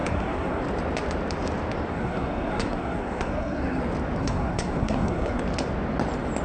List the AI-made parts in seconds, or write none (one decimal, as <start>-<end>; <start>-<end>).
0.0-0.6; 1.9-3.8; 4.2-5.4